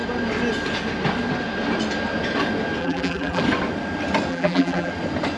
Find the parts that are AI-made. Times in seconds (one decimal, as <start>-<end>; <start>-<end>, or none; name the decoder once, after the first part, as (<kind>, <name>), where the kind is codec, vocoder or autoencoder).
2.8-3.4 (vocoder, BigVGAN v2); 4.3-4.9